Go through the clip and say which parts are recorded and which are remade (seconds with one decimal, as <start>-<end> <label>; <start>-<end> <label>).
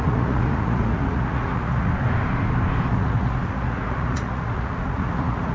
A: 0.0-1.9 remade; 1.9-2.9 recorded; 2.9-5.5 remade